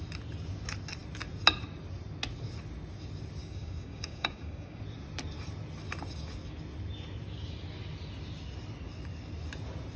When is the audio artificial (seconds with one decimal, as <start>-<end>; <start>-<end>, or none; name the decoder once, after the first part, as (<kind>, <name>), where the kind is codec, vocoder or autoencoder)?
3.4-4.8 (codec, DAC)